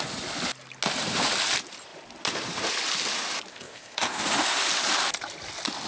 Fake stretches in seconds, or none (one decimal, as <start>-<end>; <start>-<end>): 3.5-4.2